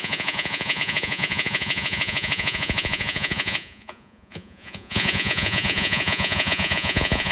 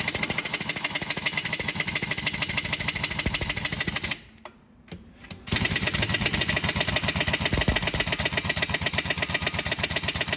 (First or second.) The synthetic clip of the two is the first